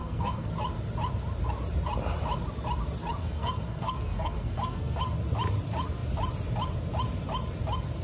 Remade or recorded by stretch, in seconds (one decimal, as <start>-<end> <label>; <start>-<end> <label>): 0.0-0.5 remade; 0.5-3.2 recorded; 3.2-5.0 remade; 5.0-8.0 recorded